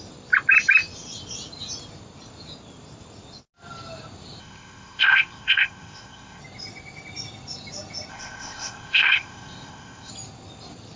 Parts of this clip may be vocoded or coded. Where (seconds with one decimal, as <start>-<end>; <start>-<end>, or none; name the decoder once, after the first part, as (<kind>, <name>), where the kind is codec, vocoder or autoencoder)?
4.4-6.4 (codec, ZipCodec); 8.1-10.1